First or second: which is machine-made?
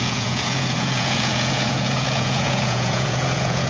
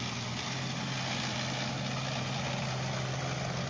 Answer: first